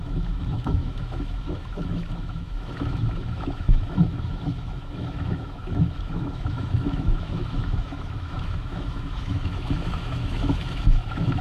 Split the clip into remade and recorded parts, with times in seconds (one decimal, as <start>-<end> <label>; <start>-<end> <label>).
0.0-11.4 remade